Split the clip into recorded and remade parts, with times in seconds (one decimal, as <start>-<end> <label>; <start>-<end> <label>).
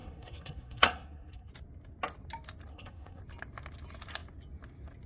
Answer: 0.0-1.5 remade; 1.5-2.7 recorded; 2.7-3.2 remade; 3.2-5.1 recorded